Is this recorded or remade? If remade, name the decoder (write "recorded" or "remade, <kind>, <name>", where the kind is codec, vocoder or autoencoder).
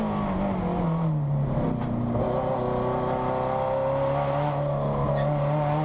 recorded